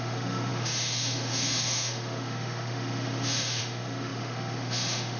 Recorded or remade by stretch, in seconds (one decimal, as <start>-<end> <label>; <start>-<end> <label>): 0.0-5.2 remade